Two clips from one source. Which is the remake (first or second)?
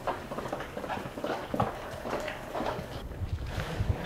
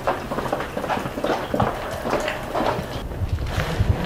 first